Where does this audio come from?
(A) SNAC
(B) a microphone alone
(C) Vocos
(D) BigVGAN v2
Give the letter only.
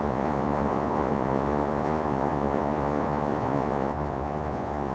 C